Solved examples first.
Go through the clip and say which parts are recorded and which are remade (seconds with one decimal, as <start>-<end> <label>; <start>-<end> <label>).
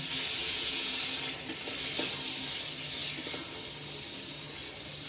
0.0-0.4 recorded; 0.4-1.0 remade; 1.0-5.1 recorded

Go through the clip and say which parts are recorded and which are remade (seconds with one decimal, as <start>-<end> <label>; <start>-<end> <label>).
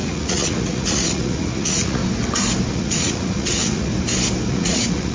0.0-2.0 remade; 2.0-2.7 recorded; 2.7-3.9 remade; 3.9-4.5 recorded; 4.5-5.1 remade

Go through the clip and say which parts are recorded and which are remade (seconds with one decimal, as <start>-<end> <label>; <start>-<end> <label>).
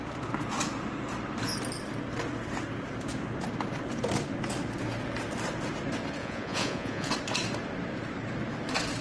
0.0-6.2 recorded; 6.2-7.1 remade; 7.1-9.0 recorded